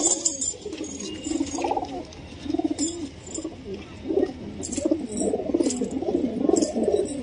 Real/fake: real